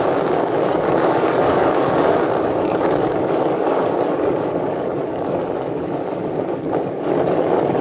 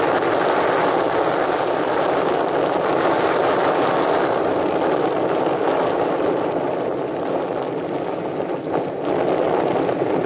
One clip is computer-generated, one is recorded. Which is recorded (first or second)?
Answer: second